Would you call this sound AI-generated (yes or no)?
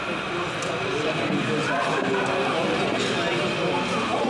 no